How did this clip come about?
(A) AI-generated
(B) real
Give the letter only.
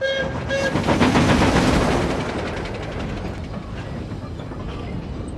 B